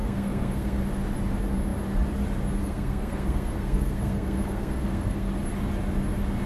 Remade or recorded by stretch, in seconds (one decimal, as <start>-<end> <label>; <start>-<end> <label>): 0.0-0.8 remade; 0.8-2.6 recorded; 2.6-5.3 remade; 5.3-6.5 recorded